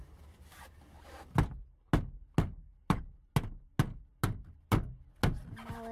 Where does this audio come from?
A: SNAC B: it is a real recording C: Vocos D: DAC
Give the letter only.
B